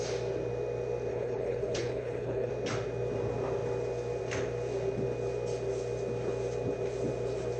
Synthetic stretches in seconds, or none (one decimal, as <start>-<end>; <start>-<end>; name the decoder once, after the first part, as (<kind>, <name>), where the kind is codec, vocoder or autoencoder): 1.1-2.5 (codec, HILCodec)